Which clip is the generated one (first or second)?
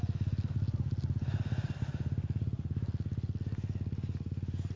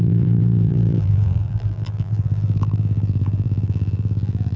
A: second